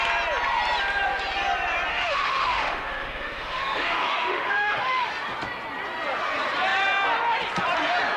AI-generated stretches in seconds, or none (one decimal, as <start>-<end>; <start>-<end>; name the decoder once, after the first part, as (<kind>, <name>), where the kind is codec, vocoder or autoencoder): 1.9-5.1 (autoencoder, DAC-VAE)